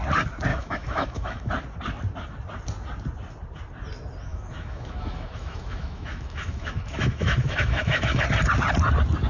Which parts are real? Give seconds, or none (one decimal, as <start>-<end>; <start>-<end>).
0.0-0.5; 1.5-4.3; 8.2-9.3